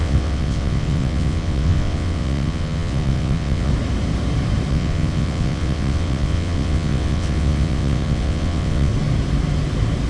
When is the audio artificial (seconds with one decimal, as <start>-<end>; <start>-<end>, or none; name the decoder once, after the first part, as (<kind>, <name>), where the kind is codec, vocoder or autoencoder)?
0.0-3.7 (vocoder, WaveNeXt); 4.7-8.9